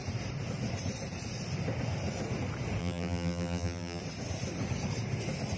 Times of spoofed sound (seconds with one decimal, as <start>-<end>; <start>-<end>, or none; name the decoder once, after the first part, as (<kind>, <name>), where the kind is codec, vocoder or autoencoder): 2.8-4.0 (vocoder, BigVGAN v2)